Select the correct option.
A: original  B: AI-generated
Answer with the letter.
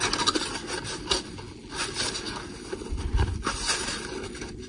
A